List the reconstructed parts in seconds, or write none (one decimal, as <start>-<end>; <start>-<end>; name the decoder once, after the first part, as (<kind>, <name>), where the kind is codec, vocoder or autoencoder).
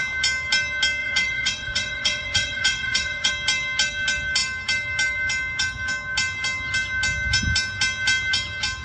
1.0-3.3 (vocoder, Vocos)